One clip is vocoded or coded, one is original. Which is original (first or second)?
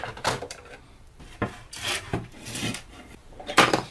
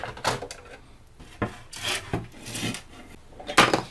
second